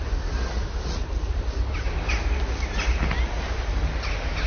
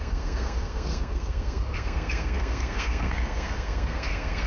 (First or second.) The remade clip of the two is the second